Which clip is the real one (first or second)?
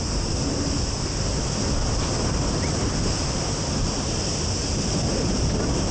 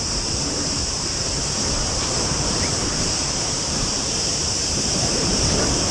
first